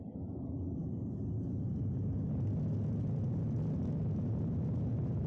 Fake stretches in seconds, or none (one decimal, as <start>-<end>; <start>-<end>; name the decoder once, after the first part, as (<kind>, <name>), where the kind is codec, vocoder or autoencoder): none